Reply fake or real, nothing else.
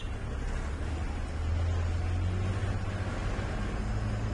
real